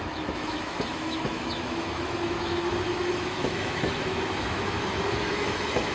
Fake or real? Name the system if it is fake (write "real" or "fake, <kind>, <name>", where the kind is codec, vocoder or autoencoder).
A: fake, autoencoder, DAC-VAE